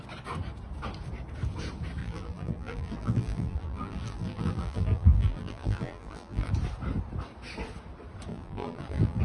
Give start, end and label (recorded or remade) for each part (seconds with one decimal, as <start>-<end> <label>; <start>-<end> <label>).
0.0-2.0 recorded; 2.0-6.5 remade; 6.5-8.3 recorded; 8.3-9.2 remade